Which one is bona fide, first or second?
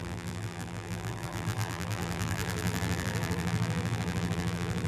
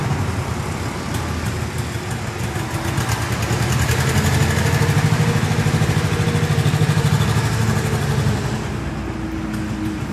second